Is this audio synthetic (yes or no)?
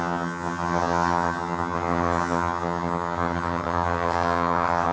yes